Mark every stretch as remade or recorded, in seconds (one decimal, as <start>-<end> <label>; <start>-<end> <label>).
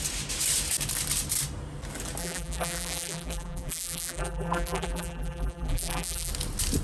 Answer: 0.0-2.2 recorded; 2.2-6.3 remade; 6.3-6.8 recorded